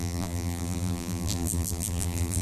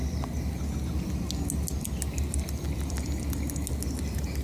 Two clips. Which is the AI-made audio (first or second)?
first